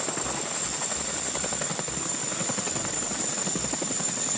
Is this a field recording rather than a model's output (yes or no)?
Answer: yes